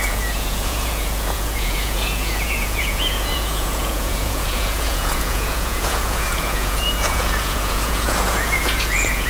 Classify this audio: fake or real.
fake